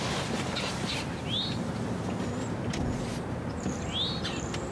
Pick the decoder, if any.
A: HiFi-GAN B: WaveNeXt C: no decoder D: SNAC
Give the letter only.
C